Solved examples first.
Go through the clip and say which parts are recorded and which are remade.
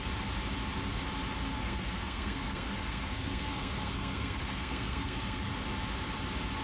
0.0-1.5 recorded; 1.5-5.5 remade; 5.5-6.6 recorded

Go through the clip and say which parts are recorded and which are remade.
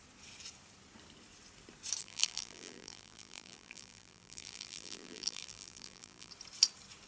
0.0-2.0 recorded; 2.0-6.3 remade; 6.3-7.1 recorded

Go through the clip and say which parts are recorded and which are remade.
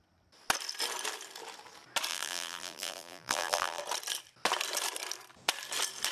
0.0-2.1 recorded; 2.1-3.8 remade; 3.8-6.1 recorded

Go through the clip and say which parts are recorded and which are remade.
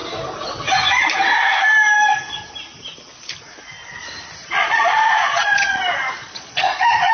0.0-4.4 recorded; 4.4-5.8 remade; 5.8-6.2 recorded; 6.2-7.1 remade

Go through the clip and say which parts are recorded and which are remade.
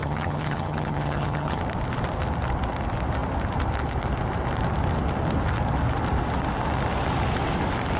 0.0-1.6 remade; 1.6-8.0 recorded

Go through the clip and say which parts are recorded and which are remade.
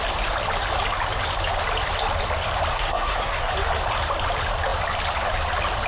0.0-2.7 recorded; 2.7-3.5 remade; 3.5-5.9 recorded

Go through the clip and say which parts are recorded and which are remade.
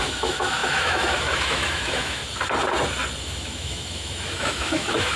0.0-2.2 remade; 2.2-3.2 recorded; 3.2-5.2 remade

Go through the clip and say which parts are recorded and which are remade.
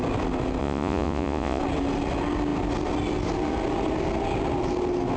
0.0-0.6 recorded; 0.6-1.6 remade; 1.6-5.2 recorded